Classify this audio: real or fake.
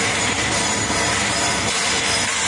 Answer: real